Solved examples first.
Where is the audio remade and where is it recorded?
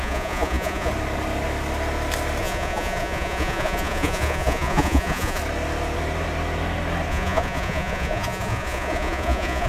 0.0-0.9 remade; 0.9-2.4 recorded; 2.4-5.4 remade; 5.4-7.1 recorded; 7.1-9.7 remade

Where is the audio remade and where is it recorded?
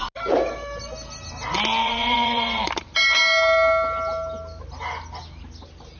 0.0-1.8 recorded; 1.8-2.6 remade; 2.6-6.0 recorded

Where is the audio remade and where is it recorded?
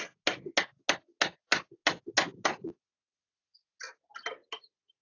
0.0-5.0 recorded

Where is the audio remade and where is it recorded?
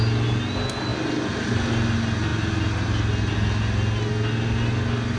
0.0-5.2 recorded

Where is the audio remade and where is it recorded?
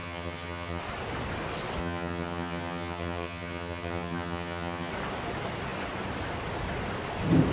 0.0-0.8 remade; 0.8-1.8 recorded; 1.8-4.9 remade; 4.9-7.5 recorded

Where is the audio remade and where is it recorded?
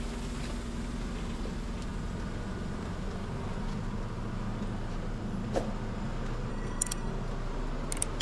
0.0-6.5 recorded; 6.5-7.1 remade; 7.1-8.2 recorded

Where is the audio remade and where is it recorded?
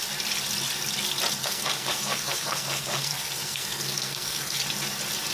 0.0-1.4 recorded; 1.4-4.6 remade; 4.6-5.3 recorded